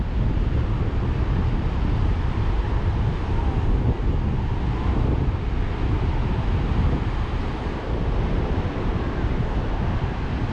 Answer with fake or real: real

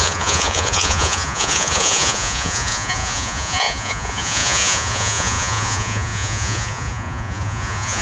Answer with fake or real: fake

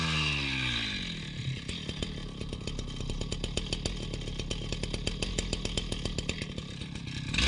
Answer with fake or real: real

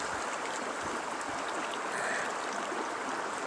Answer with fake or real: real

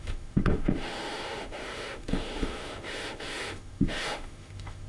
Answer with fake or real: fake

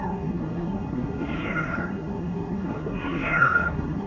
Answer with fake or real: fake